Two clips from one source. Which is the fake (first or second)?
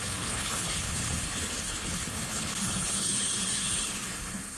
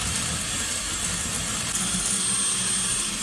first